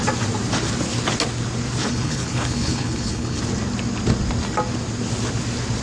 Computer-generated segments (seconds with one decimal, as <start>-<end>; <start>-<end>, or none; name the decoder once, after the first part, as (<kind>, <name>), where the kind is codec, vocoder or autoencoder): 1.8-3.4 (codec, HILCodec)